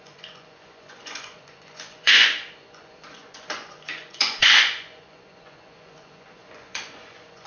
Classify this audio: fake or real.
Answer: fake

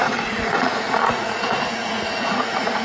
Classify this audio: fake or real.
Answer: fake